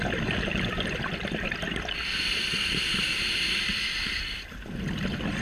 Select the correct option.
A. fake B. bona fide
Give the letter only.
B